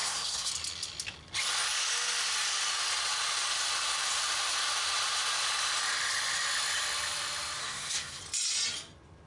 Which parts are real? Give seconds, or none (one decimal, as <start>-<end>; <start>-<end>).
0.5-7.6; 8.2-9.3